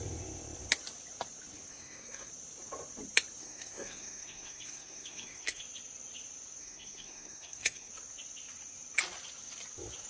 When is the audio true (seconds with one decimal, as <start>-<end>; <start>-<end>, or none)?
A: 0.0-1.7; 2.3-3.4; 5.6-6.6; 7.9-10.1